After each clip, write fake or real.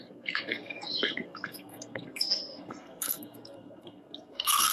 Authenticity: fake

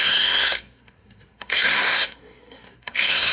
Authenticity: fake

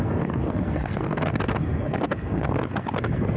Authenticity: fake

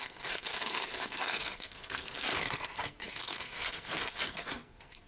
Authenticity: fake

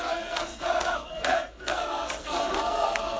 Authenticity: fake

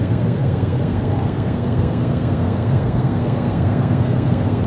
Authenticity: fake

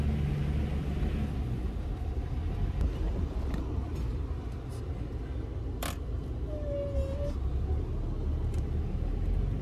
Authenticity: real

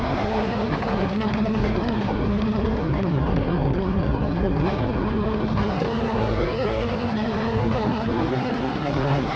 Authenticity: fake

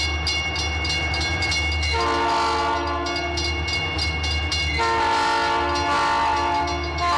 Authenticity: real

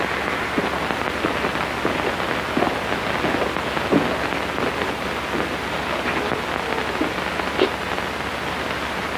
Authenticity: real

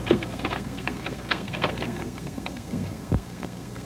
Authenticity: fake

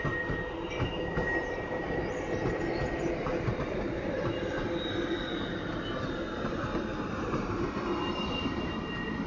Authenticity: real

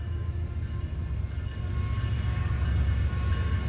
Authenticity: real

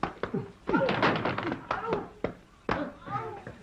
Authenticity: real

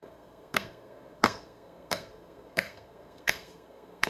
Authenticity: fake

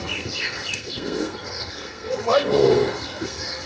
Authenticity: fake